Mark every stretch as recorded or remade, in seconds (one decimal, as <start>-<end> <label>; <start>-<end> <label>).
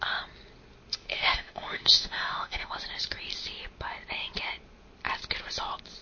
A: 0.0-0.9 recorded; 0.9-2.7 remade; 2.7-6.0 recorded